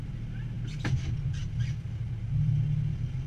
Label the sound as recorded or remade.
recorded